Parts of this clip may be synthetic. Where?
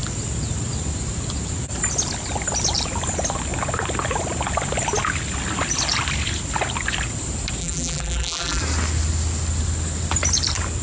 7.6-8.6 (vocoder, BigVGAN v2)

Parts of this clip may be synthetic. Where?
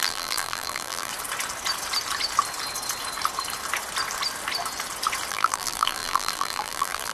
0.0-1.1 (vocoder, BigVGAN v2); 5.3-7.1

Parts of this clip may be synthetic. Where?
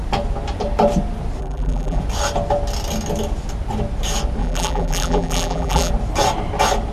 1.4-2.0 (vocoder, BigVGAN v2); 4.4-5.9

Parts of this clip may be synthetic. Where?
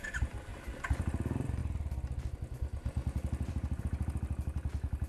0.0-0.5 (vocoder, BigVGAN v2); 1.0-5.1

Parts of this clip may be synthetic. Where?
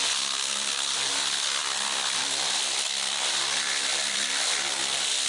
1.6-4.8 (vocoder, BigVGAN v2)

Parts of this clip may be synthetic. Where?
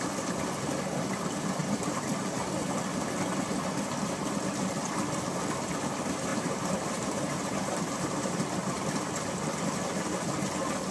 1.6-2.1 (vocoder, BigVGAN v2); 6.3-8.0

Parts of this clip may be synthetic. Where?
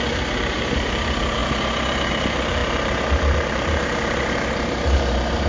0.0-5.5 (vocoder, BigVGAN v2)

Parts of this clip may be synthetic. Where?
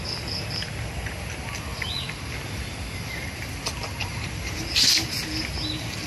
4.0-5.2 (vocoder, BigVGAN v2)